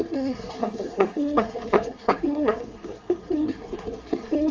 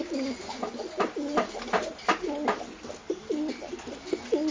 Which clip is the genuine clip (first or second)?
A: second